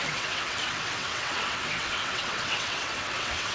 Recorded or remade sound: remade